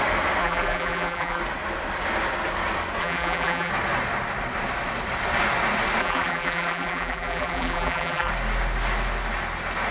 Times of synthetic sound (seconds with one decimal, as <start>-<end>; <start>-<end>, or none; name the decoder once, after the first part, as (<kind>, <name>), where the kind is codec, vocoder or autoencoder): 0.4-1.4 (vocoder, BigVGAN v2); 3.0-3.7; 6.0-8.3